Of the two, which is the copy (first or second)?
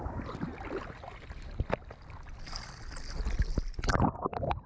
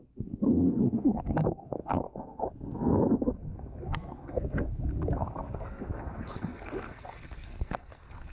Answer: second